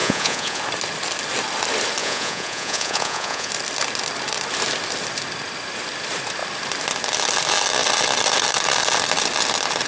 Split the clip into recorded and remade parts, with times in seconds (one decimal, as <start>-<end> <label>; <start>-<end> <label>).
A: 0.0-0.6 remade; 0.6-2.0 recorded; 2.0-3.5 remade; 3.5-9.9 recorded